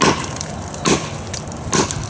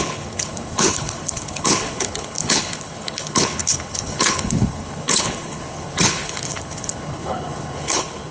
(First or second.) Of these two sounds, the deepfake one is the second